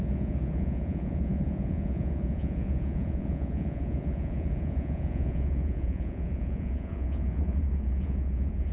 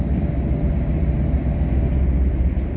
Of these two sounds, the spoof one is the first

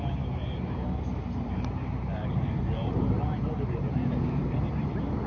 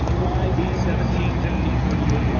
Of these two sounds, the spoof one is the first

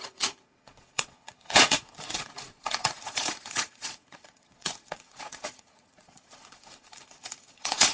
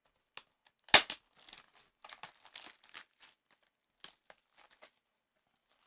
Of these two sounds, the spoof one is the first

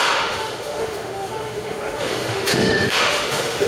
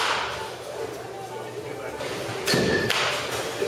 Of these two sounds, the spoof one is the first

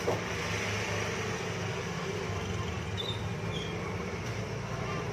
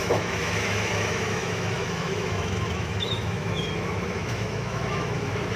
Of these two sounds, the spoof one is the second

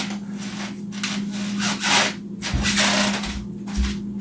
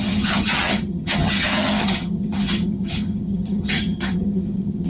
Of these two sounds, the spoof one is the second